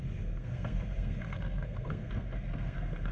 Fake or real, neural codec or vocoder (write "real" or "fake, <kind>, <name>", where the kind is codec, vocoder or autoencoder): fake, codec, SNAC